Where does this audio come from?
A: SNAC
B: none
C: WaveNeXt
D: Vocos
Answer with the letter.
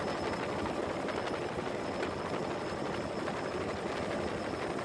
B